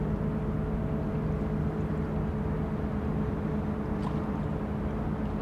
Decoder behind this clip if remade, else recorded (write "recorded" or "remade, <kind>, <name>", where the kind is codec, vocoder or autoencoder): recorded